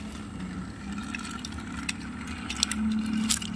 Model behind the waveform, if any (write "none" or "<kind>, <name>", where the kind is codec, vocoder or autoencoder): none